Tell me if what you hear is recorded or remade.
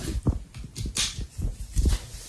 recorded